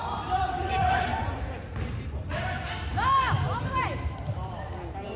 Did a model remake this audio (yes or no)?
yes